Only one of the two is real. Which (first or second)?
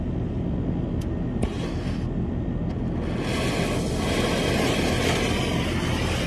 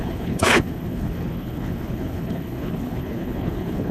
first